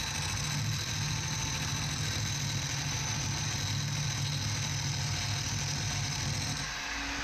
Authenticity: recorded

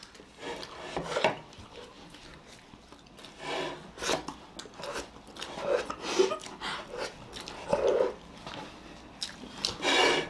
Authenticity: recorded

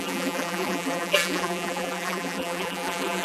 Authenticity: remade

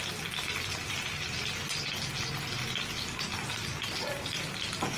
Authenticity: recorded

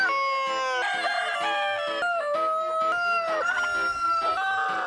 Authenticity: recorded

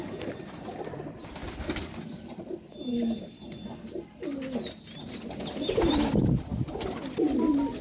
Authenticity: remade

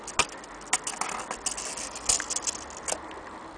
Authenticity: recorded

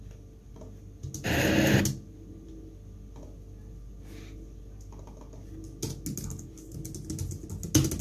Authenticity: recorded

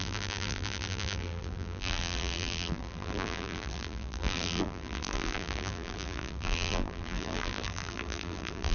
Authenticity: remade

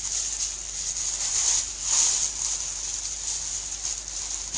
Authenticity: recorded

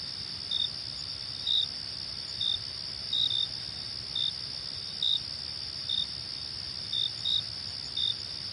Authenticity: recorded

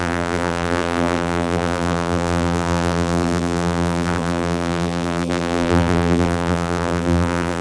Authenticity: remade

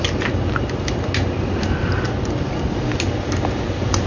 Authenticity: recorded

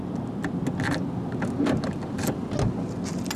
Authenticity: recorded